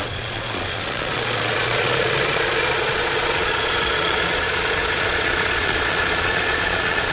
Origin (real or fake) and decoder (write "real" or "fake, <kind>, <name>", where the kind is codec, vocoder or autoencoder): fake, vocoder, Vocos